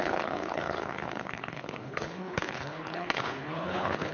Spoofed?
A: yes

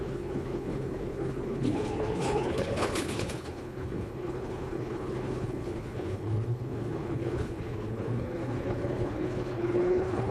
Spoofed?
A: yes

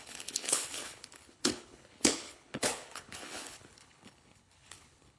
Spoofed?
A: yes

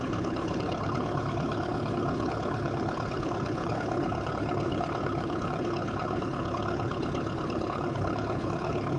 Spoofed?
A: yes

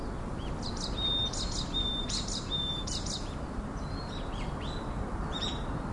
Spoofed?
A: no